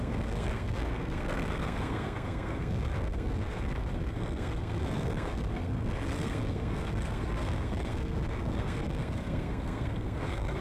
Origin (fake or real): fake